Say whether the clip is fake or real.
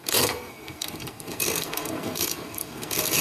fake